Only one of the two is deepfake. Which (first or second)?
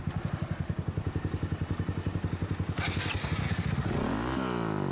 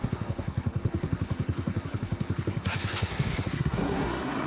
second